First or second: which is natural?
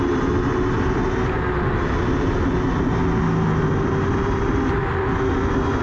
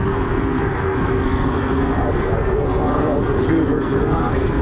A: first